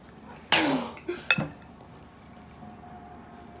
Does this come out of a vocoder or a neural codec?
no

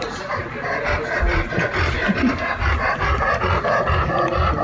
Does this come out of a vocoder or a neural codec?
no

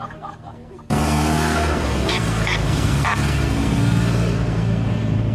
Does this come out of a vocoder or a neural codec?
yes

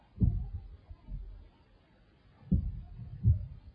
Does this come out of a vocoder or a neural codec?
no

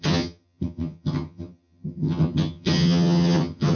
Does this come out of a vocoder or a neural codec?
yes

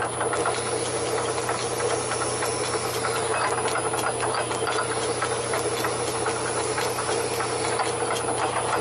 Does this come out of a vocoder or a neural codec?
no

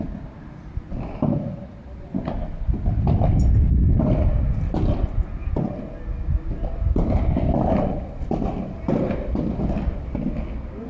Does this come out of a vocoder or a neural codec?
no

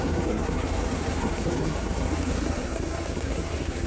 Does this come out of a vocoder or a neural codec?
yes